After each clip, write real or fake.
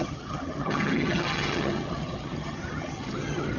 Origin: fake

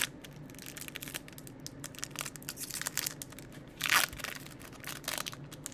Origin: real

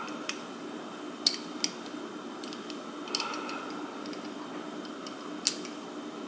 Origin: real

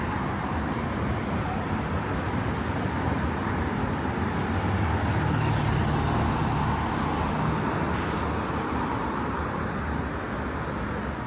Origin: real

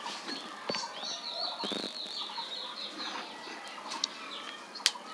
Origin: real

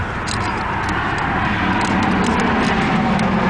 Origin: real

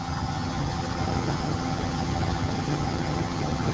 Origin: fake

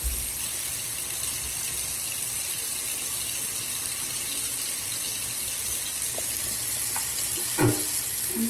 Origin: real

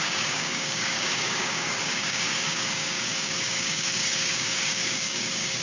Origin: fake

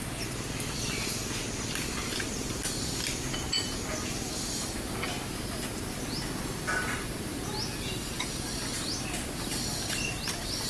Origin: real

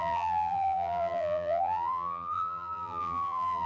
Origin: fake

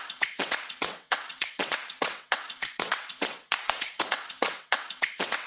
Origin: fake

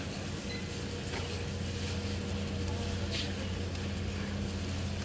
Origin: real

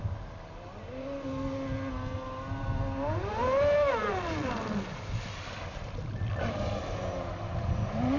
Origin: real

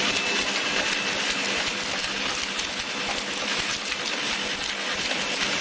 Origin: real